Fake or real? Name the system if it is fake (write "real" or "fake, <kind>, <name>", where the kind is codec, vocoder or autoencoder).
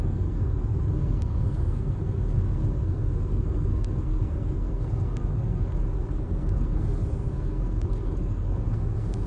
fake, codec, SNAC